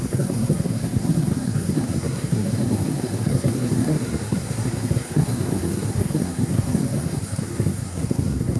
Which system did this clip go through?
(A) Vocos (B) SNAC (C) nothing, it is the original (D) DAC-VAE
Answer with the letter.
B